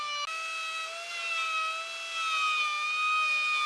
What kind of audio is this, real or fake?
real